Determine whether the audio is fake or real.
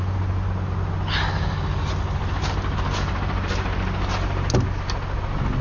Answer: real